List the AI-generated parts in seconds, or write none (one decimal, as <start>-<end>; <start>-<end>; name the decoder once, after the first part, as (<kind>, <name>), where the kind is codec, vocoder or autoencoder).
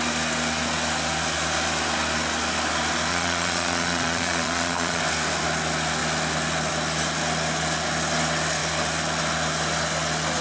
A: 3.1-5.0 (vocoder, Vocos)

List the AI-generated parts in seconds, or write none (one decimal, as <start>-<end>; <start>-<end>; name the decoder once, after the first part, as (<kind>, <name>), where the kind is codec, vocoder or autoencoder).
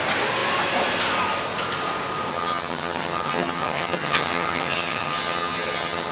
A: 2.3-6.1 (vocoder, HiFi-GAN)